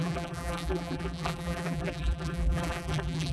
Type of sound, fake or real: fake